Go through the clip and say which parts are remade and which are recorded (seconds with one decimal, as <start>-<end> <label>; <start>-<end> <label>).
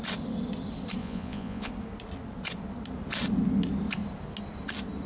0.0-1.0 recorded; 1.0-1.7 remade; 1.7-5.1 recorded